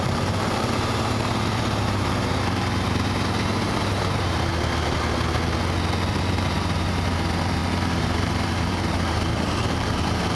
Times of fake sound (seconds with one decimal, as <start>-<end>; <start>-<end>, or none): 0.0-4.5; 6.1-10.3